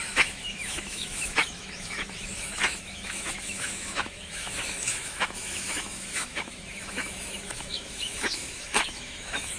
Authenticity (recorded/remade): remade